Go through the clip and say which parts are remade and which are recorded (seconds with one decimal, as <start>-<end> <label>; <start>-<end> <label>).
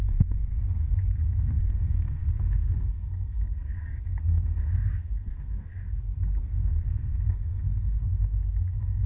0.0-5.7 remade; 5.7-6.4 recorded; 6.4-9.1 remade